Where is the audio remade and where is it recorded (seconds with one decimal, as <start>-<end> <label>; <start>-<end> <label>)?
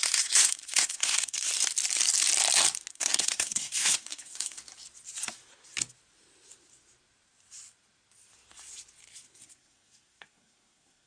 0.0-1.5 remade; 1.5-2.9 recorded; 2.9-4.6 remade; 4.6-9.4 recorded; 9.4-11.1 remade